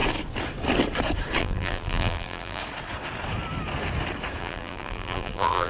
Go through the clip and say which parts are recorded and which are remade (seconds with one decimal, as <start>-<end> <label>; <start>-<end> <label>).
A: 0.0-1.4 recorded; 1.4-2.6 remade; 2.6-4.4 recorded; 4.4-5.7 remade